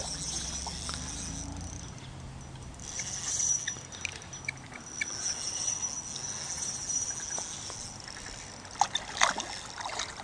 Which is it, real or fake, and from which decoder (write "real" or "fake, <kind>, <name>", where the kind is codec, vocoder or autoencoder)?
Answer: real